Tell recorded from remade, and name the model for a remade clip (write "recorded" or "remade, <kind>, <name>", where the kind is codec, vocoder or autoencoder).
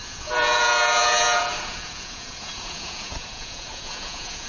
remade, vocoder, Vocos